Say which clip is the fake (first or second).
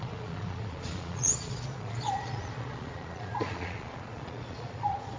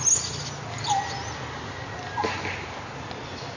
first